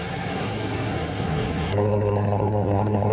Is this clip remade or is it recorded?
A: remade